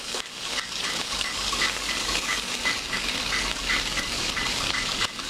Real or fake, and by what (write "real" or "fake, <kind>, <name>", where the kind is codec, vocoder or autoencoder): fake, codec, DAC